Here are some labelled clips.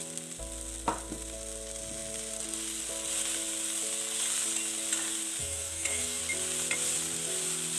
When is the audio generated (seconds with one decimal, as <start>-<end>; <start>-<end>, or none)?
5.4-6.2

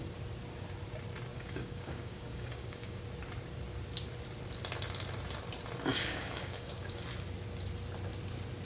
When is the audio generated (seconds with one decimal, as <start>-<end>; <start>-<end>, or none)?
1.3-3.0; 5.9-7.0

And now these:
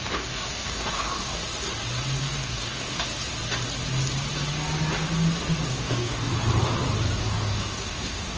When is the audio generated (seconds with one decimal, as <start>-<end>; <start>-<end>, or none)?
0.0-1.4; 2.2-3.1; 5.7-6.3; 7.2-8.4

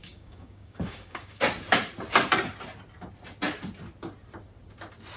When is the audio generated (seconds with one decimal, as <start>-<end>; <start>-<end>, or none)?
0.0-1.4

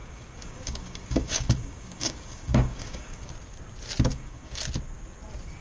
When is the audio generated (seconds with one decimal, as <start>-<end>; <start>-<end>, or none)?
0.0-3.3; 4.1-4.6

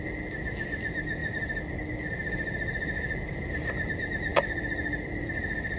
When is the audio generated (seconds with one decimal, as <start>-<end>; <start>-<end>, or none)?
none

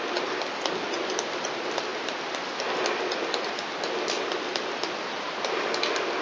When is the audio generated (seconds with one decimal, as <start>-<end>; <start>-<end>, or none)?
none

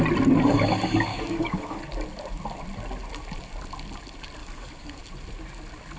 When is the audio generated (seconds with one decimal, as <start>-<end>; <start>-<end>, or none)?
1.1-1.8; 4.4-5.0